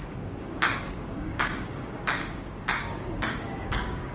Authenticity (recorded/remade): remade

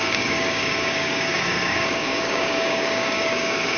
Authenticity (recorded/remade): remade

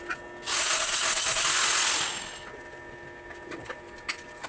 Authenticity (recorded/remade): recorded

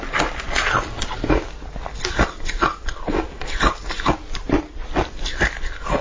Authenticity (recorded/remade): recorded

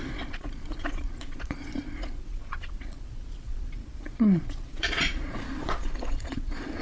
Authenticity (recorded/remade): remade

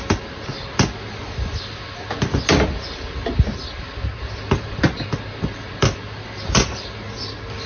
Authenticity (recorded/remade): recorded